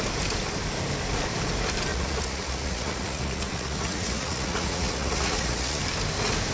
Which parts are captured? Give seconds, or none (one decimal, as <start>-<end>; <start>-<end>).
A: 0.0-1.9; 5.8-6.5